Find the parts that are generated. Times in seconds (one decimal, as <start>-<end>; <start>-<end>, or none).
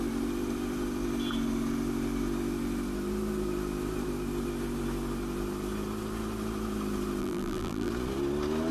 7.2-7.9